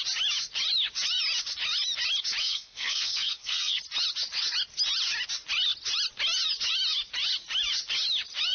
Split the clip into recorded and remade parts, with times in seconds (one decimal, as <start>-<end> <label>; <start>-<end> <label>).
0.0-2.4 recorded; 2.4-3.8 remade; 3.8-8.5 recorded